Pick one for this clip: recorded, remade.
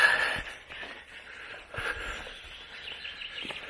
recorded